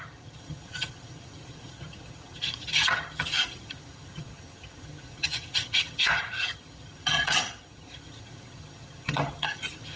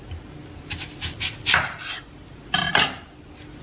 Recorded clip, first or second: second